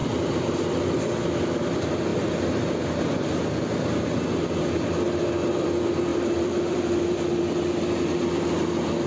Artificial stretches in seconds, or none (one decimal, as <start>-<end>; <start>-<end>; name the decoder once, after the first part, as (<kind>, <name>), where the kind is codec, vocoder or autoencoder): 0.0-1.1 (vocoder, BigVGAN v2); 6.1-7.0